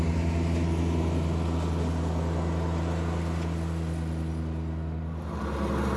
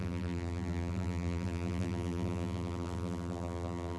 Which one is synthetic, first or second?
second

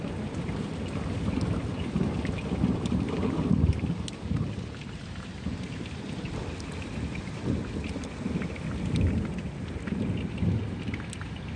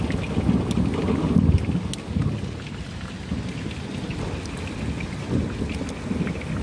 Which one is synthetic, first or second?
first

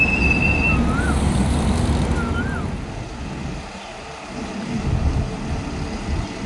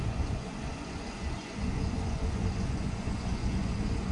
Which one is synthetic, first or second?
second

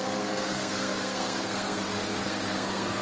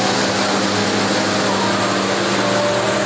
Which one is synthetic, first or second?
first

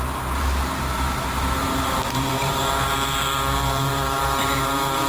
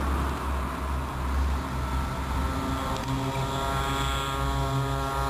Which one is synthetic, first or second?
first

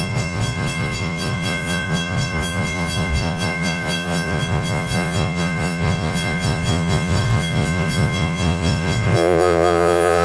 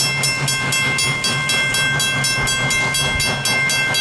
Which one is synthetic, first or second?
first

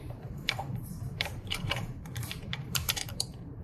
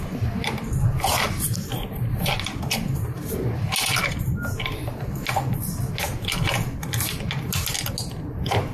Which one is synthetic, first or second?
first